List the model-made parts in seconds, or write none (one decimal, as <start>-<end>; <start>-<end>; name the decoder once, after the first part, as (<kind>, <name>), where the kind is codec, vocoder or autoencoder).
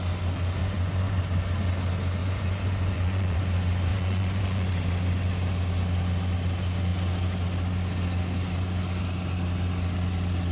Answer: 0.6-1.2 (vocoder, Vocos); 2.2-3.4; 3.9-4.7